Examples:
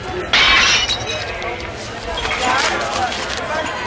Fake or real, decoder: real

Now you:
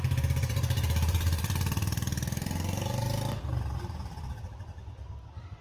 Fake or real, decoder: fake, vocoder, BigVGAN v2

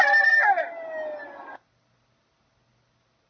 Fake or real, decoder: real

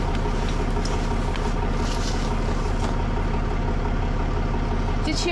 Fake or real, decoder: real